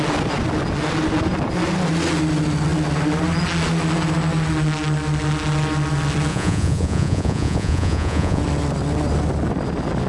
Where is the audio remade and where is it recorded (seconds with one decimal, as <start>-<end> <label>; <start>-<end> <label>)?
0.0-6.3 recorded; 6.3-8.4 remade; 8.4-10.1 recorded